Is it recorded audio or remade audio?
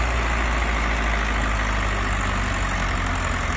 recorded